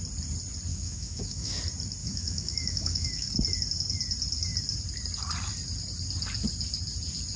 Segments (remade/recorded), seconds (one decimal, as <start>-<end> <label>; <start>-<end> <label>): 0.0-0.7 recorded; 0.7-1.6 remade; 1.6-2.0 recorded; 2.0-3.3 remade; 3.3-7.4 recorded